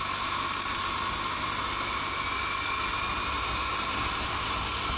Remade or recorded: recorded